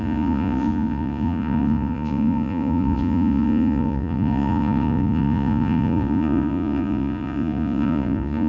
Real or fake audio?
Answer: fake